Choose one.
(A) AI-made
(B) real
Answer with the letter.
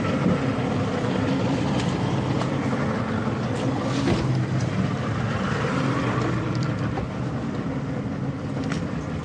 B